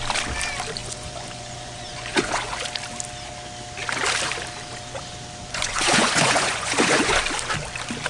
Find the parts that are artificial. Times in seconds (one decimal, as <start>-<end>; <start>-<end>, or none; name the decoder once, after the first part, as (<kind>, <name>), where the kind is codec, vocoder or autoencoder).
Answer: 0.8-2.6 (vocoder, Vocos); 5.4-7.2